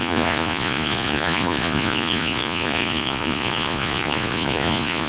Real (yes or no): no